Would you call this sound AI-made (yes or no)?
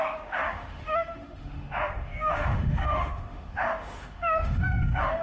yes